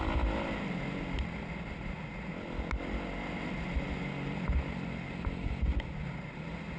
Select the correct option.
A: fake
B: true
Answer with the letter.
B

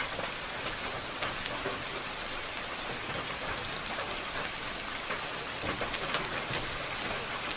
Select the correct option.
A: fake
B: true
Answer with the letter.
B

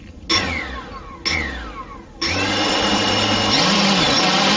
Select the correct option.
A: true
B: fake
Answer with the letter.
A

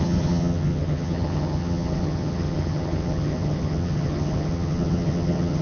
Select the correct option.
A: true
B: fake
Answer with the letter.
B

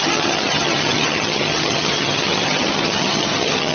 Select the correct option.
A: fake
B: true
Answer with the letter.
A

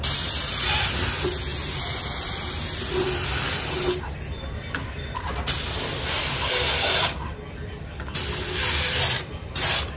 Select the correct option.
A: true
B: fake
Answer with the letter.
A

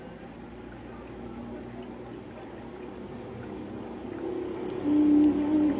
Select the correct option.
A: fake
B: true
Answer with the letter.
B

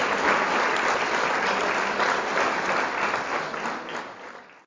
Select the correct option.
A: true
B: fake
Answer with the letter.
A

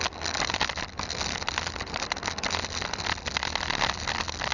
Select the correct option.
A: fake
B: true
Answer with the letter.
B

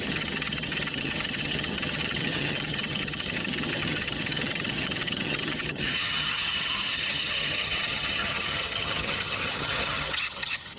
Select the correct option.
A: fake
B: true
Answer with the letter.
A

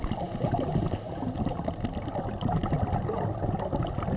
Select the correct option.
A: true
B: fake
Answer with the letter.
A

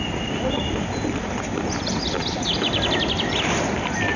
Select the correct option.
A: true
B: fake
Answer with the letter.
A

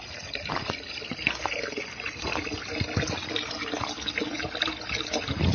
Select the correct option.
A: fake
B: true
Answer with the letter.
B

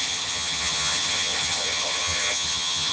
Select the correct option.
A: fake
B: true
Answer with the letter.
A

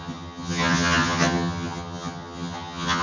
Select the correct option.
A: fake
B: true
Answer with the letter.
A